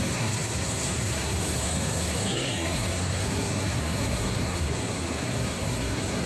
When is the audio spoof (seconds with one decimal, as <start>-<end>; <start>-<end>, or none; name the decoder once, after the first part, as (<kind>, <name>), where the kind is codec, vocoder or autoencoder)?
0.0-6.3 (codec, SNAC)